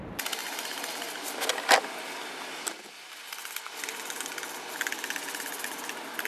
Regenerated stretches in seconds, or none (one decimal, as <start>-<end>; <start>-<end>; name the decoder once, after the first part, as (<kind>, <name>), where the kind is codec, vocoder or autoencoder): 0.4-0.9 (vocoder, BigVGAN v2)